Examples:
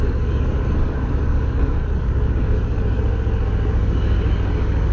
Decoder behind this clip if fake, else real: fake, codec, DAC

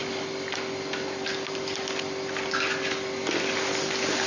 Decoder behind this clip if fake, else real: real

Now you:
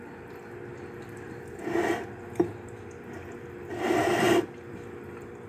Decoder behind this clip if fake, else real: real